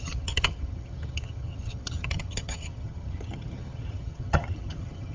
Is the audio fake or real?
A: fake